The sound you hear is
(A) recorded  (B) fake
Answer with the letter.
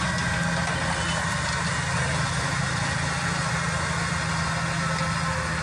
A